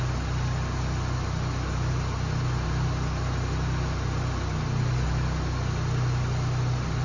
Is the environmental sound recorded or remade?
recorded